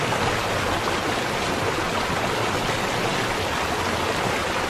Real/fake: real